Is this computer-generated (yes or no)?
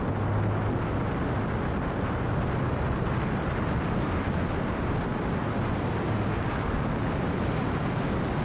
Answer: no